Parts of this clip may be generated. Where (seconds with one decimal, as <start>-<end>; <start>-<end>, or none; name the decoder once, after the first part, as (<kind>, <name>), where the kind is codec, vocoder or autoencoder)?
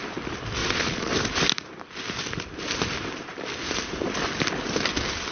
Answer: 0.6-1.1 (vocoder, Vocos)